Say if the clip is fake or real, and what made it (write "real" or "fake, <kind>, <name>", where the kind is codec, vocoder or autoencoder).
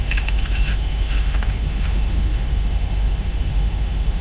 fake, autoencoder, DAC-VAE